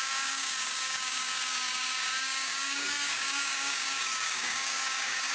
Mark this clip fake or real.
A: fake